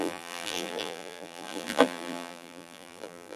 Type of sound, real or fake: fake